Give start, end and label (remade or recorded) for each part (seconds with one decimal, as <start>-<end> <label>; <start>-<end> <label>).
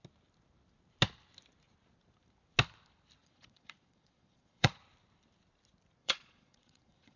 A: 0.0-3.2 recorded; 3.2-4.8 remade; 4.8-6.0 recorded; 6.0-7.2 remade